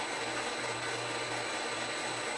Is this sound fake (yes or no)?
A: no